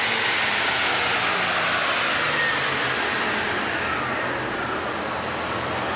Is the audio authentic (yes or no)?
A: yes